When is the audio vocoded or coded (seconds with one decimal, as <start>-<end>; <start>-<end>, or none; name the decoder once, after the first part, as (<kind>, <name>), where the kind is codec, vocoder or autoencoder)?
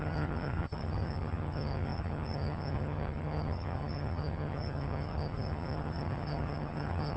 0.0-7.2 (vocoder, HiFi-GAN)